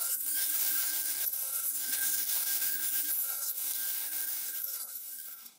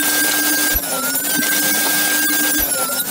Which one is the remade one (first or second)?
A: first